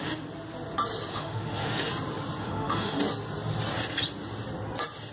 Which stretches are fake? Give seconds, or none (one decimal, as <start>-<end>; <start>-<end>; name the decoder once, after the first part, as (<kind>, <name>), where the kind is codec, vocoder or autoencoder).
1.1-1.9 (autoencoder, DAC-VAE); 2.4-3.0